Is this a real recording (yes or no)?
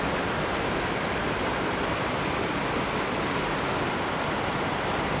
no